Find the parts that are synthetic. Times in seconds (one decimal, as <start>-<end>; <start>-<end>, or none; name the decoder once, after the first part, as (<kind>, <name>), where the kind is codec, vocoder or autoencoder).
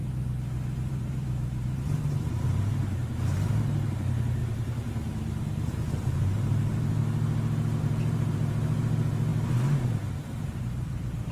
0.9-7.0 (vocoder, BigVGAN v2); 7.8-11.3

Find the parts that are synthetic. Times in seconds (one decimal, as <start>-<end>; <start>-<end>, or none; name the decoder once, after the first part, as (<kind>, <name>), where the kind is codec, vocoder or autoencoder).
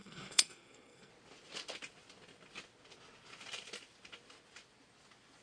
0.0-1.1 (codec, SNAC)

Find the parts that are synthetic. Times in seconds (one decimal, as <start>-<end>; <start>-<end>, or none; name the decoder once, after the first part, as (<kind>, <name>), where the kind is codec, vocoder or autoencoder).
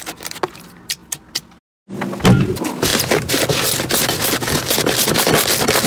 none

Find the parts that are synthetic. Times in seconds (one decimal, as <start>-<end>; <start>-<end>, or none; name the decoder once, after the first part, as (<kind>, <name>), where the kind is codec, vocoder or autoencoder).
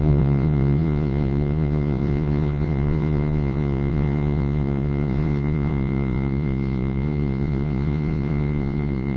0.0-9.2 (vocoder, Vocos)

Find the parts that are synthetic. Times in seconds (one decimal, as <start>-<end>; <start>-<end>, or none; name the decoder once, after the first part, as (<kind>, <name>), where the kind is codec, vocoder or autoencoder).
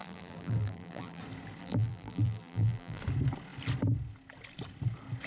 0.0-1.2 (vocoder, BigVGAN v2); 1.6-3.0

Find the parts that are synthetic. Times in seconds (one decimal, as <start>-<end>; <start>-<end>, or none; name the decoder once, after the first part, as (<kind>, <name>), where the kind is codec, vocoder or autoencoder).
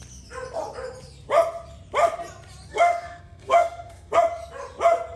2.7-4.2 (codec, SNAC)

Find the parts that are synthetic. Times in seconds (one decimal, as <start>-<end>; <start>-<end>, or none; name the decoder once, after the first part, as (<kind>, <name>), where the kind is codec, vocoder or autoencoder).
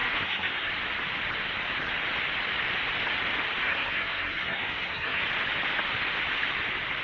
0.0-0.7 (codec, SNAC); 3.6-5.2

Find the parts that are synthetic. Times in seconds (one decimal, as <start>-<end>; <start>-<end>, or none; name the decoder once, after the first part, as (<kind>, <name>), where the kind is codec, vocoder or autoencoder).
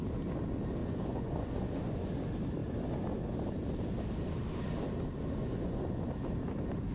0.8-2.1 (vocoder, Vocos); 5.4-6.0